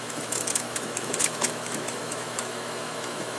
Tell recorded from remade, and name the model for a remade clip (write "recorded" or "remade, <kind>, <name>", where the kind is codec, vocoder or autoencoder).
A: remade, autoencoder, DAC-VAE